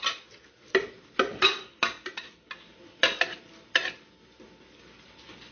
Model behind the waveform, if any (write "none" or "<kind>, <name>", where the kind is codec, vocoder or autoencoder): none